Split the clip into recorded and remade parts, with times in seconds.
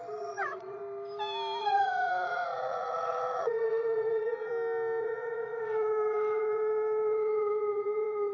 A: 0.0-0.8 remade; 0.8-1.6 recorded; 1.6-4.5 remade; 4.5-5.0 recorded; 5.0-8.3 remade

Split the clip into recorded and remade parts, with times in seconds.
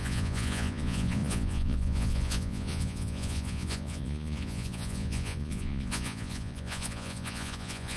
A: 0.0-8.0 remade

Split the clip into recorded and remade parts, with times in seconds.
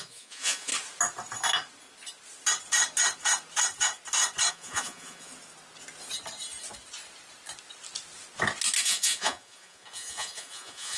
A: 0.0-0.7 remade; 0.7-4.5 recorded; 4.5-5.3 remade; 5.3-8.8 recorded; 8.8-11.0 remade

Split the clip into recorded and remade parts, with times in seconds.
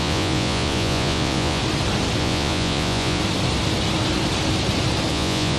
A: 0.0-1.6 remade; 1.6-2.2 recorded; 2.2-3.2 remade; 3.2-5.1 recorded; 5.1-5.6 remade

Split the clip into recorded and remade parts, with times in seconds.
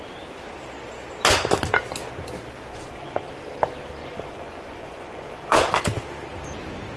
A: 0.0-2.7 recorded; 2.7-3.3 remade; 3.3-4.0 recorded; 4.0-5.8 remade; 5.8-7.0 recorded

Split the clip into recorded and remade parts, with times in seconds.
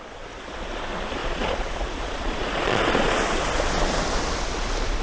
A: 0.0-1.2 recorded; 1.2-3.1 remade; 3.1-5.0 recorded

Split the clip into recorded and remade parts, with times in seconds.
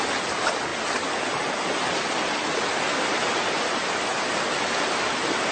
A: 0.0-5.5 recorded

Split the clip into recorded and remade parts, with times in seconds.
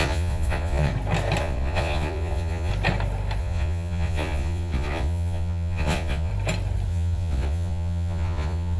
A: 0.0-0.9 remade; 0.9-1.4 recorded; 1.4-2.7 remade; 2.7-3.4 recorded; 3.4-6.3 remade; 6.3-6.9 recorded; 6.9-8.8 remade